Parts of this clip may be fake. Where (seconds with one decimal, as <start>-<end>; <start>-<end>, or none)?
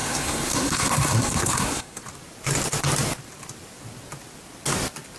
0.0-2.0